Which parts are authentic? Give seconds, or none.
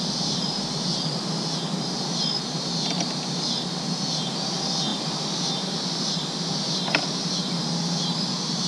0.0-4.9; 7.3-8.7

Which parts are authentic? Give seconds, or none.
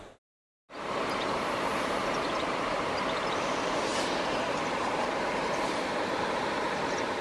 none